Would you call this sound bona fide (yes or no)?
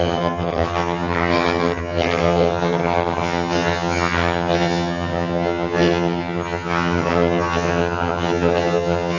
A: no